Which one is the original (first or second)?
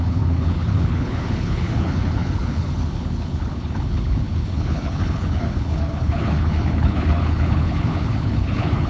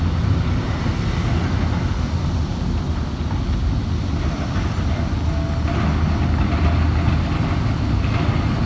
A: second